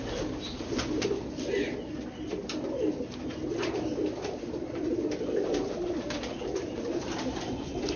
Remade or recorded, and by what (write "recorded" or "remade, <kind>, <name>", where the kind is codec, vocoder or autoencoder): recorded